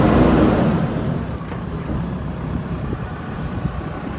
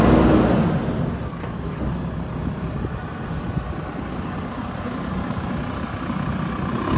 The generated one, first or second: first